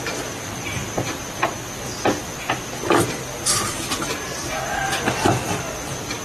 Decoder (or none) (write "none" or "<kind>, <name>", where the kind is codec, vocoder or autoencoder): none